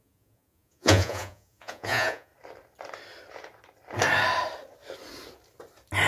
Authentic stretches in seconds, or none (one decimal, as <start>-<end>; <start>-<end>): 2.3-6.1